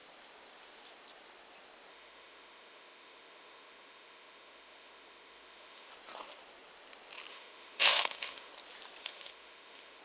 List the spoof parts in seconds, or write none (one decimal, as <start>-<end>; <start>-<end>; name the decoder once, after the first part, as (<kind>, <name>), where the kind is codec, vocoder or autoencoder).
1.9-5.9 (autoencoder, DAC-VAE); 7.3-8.5; 9.0-10.0

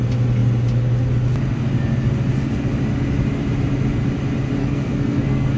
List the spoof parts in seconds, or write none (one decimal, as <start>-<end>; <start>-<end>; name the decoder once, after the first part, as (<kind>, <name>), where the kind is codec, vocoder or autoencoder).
4.6-5.6 (codec, SNAC)

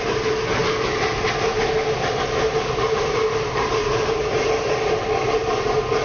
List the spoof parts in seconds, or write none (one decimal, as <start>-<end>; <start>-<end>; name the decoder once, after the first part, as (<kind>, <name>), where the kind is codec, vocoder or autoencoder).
none